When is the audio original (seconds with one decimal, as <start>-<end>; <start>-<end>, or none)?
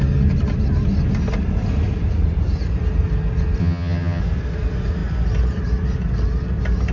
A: 0.0-3.6; 4.2-6.9